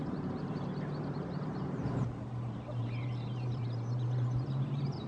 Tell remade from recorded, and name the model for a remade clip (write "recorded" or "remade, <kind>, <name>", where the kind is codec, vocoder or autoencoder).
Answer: remade, vocoder, BigVGAN v2